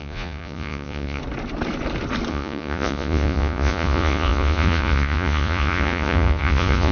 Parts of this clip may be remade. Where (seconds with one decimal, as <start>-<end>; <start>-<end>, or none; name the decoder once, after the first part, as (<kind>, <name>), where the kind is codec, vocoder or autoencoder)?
0.0-1.2 (vocoder, Vocos); 2.3-6.9